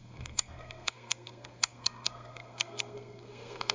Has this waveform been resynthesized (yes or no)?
yes